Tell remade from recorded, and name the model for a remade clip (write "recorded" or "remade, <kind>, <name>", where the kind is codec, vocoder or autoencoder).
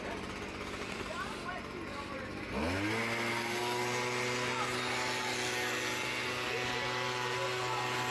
recorded